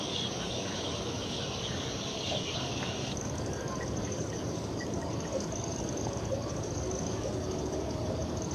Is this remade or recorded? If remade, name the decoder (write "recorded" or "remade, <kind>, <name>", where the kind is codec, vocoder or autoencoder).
remade, codec, DAC